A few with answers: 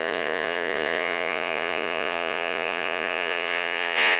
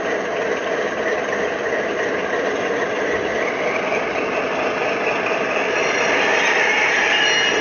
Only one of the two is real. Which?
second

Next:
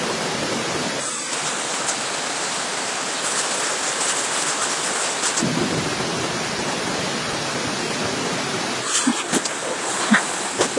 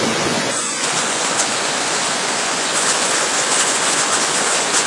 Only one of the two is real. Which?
first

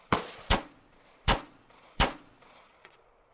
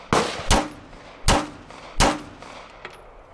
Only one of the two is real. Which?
second